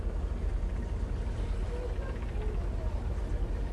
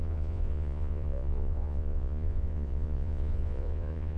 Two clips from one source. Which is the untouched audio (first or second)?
first